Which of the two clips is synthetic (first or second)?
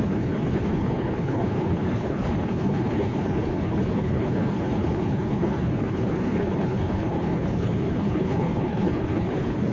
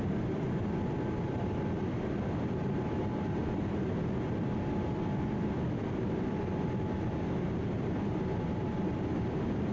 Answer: first